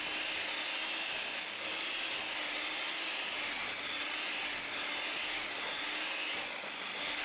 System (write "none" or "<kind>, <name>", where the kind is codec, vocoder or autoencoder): none